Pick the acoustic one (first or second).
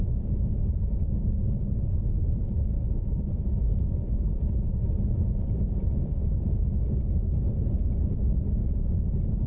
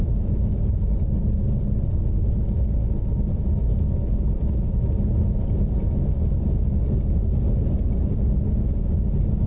second